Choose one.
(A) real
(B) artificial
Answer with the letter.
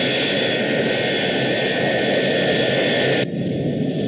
A